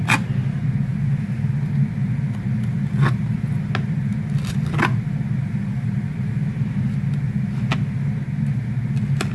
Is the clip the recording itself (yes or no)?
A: yes